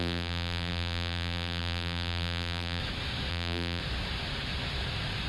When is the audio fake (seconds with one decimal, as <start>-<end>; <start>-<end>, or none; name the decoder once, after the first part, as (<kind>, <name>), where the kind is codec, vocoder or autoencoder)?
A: 0.0-2.8 (vocoder, BigVGAN v2); 3.3-3.8